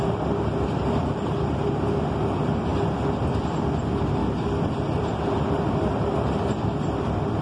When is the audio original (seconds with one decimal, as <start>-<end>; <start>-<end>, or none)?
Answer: 2.7-3.7; 4.2-4.7